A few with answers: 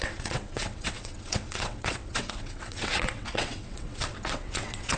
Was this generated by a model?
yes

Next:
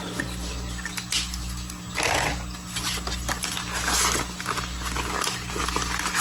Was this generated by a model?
no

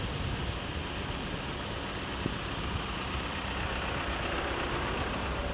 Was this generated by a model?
no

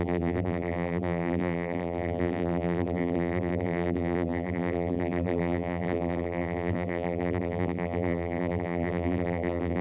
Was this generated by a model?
yes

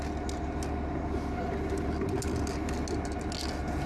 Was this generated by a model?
no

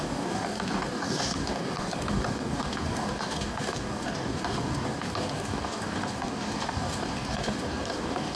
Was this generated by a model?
yes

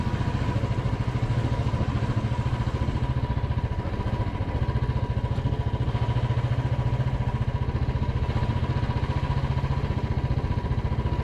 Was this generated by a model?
no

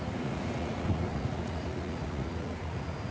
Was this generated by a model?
yes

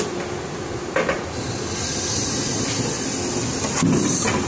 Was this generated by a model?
no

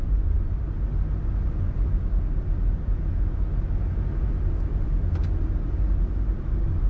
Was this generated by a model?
no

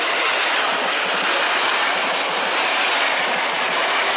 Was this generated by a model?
no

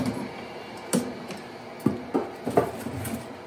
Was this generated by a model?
no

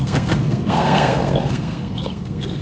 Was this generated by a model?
yes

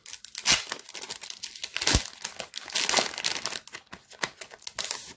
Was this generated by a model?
no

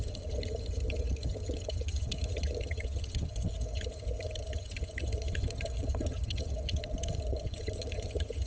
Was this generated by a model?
yes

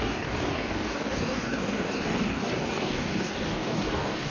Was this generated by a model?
yes